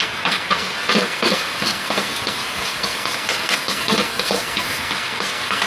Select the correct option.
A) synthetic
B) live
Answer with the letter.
A